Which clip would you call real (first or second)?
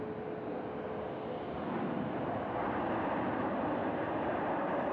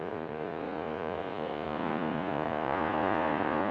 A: first